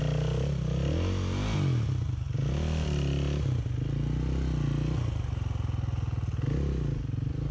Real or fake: real